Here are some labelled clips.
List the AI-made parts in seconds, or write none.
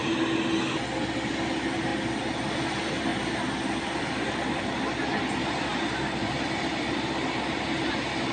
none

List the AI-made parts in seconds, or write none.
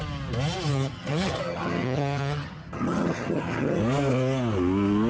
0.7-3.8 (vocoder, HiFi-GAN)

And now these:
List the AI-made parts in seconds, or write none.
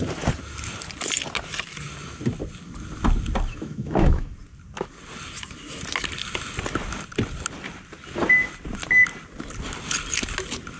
3.5-4.3 (autoencoder, DAC-VAE)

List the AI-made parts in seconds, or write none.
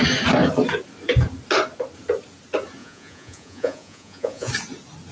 2.8-4.5 (vocoder, Vocos)